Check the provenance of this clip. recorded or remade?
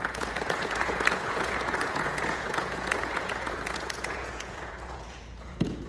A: remade